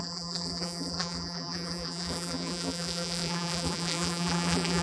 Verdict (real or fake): fake